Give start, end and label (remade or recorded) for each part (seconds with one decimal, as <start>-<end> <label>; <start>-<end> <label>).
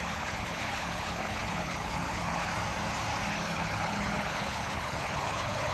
0.0-2.5 remade; 2.5-3.3 recorded; 3.3-5.7 remade